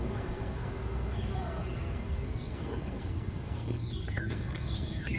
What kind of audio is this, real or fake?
fake